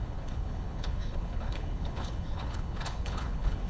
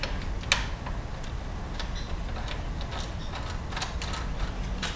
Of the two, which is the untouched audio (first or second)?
second